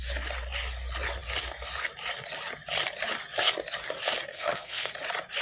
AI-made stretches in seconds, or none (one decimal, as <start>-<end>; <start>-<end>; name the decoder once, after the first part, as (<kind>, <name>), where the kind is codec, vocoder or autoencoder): 4.3-4.9 (codec, SNAC)